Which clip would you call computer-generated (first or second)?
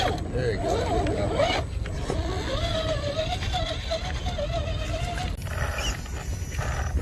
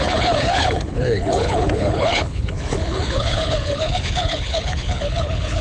second